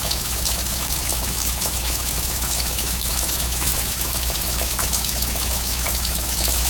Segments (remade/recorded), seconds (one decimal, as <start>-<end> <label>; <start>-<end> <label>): 0.0-6.7 remade